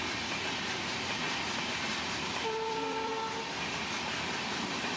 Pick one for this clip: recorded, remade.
remade